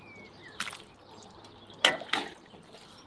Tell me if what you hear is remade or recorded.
recorded